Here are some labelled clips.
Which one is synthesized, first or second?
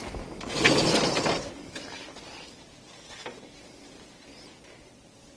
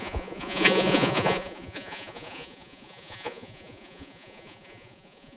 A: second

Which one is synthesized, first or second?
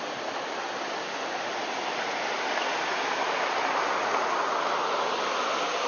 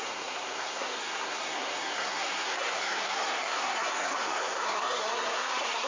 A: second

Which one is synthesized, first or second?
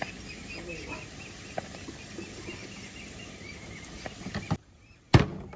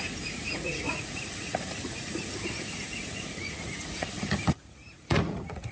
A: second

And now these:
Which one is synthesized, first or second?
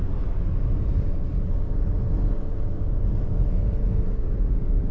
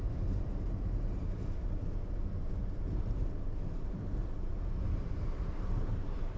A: second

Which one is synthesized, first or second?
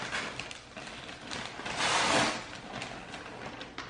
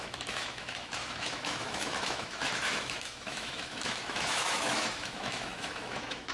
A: second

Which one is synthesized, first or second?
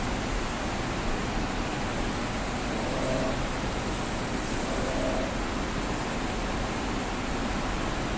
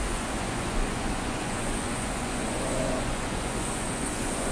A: second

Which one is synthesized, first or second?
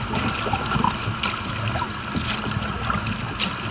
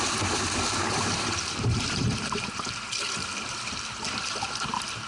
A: second